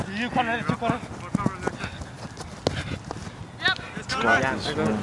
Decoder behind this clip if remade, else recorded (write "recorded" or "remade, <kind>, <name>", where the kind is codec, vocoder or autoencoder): recorded